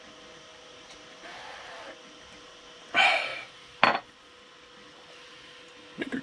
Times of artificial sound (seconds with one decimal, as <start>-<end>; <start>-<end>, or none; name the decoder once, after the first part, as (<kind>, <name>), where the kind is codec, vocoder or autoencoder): none